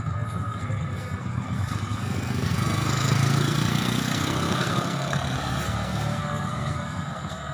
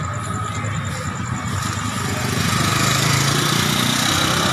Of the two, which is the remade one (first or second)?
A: first